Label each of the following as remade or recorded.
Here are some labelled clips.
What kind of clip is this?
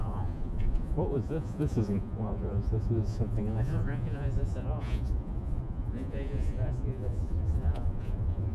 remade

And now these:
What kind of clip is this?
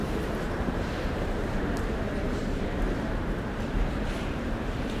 remade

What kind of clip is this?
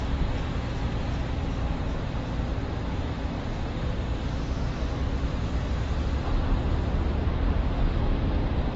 recorded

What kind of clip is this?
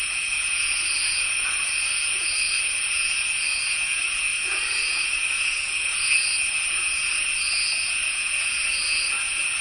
remade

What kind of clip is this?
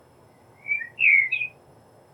remade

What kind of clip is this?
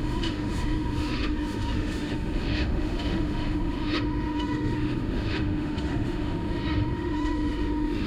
remade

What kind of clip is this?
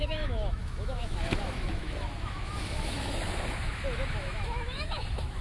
remade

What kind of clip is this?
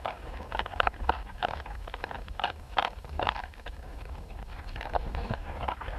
remade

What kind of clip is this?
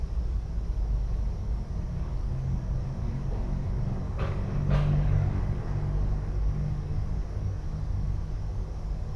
remade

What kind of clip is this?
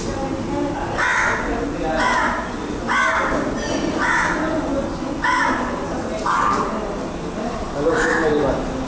recorded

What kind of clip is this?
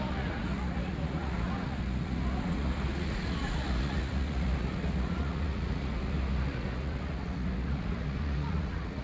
remade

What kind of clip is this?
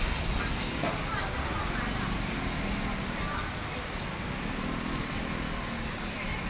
recorded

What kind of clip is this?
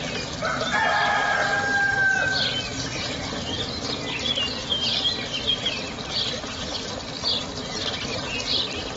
recorded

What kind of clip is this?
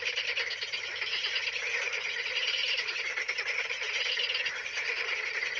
recorded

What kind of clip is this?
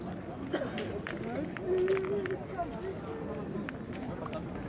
recorded